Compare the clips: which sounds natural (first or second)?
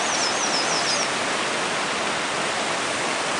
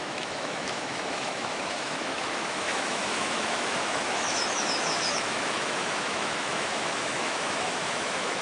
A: first